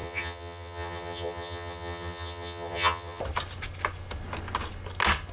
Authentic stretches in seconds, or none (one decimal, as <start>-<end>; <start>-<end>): 3.2-5.3